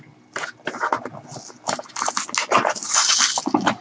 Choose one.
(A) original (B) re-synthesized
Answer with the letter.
A